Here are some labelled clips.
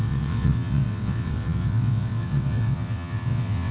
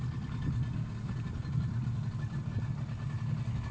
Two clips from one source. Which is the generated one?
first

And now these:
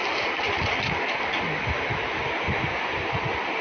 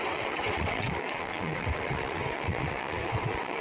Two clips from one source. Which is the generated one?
second